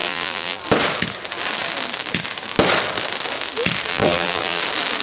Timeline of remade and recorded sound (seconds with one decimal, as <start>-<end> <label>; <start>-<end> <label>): 0.0-0.6 remade; 0.6-3.9 recorded; 3.9-4.6 remade; 4.6-5.0 recorded